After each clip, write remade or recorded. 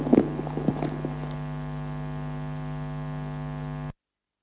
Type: recorded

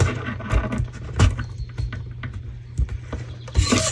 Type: recorded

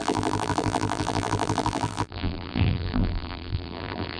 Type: remade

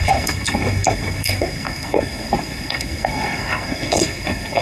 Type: remade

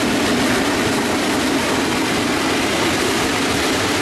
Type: recorded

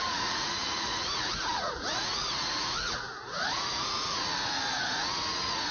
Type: remade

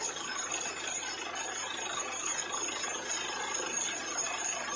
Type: recorded